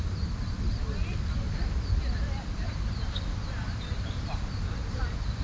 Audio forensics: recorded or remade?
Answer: remade